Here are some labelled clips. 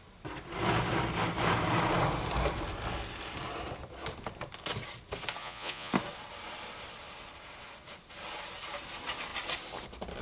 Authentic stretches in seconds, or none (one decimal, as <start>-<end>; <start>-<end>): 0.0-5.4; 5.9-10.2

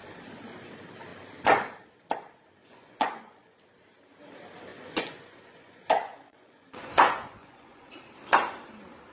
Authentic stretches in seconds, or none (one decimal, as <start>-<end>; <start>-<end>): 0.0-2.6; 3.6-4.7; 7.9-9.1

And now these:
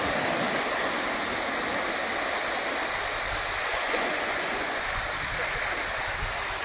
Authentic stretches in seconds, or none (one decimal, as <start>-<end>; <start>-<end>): 0.0-3.7; 5.0-6.6